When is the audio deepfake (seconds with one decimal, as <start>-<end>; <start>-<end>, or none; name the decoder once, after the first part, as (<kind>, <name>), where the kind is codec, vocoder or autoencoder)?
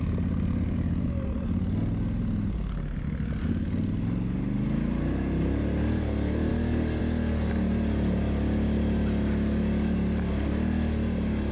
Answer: 6.5-7.0 (codec, DAC)